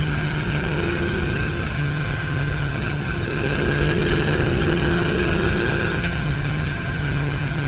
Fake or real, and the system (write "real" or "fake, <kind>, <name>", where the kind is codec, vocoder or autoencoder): fake, vocoder, HiFi-GAN